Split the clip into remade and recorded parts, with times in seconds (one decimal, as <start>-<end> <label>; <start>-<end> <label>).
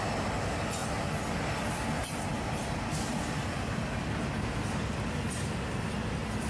0.0-6.5 recorded